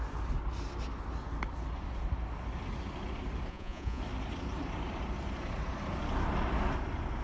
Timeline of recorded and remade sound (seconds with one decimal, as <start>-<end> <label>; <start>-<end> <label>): 0.0-3.5 recorded; 3.5-4.0 remade; 4.0-7.2 recorded